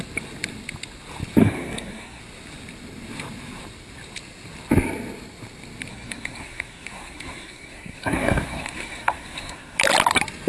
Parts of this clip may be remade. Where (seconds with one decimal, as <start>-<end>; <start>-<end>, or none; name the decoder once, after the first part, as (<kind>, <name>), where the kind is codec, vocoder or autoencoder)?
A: 1.4-2.2 (codec, SNAC); 5.9-9.8